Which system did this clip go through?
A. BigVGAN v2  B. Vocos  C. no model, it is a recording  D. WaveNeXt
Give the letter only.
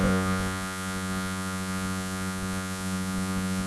B